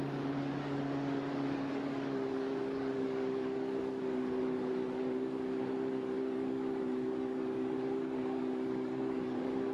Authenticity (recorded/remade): remade